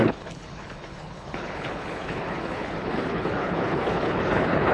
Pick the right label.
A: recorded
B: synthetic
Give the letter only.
B